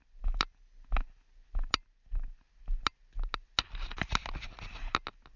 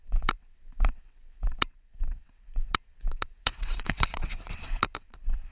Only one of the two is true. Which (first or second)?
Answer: first